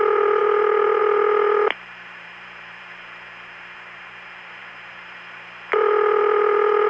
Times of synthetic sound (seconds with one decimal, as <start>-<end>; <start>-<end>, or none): 0.0-6.9